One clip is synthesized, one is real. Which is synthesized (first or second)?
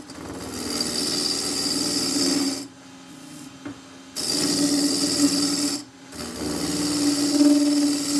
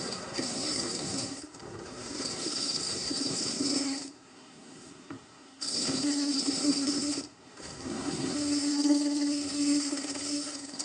second